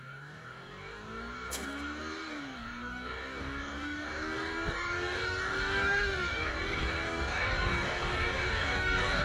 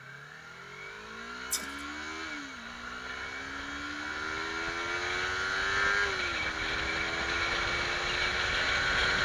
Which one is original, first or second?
second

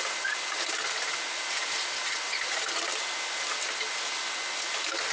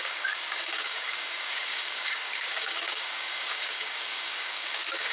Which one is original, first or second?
first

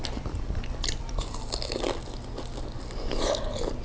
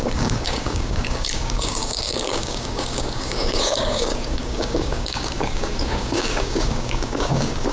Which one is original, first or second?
first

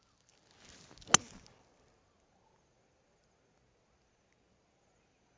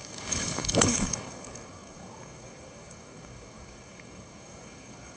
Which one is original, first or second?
first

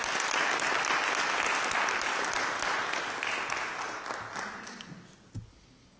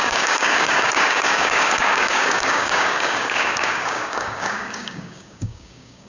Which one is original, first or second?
first